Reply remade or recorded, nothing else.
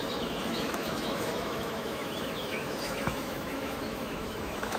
remade